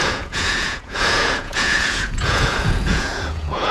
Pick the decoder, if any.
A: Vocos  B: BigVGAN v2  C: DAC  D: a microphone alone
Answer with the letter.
A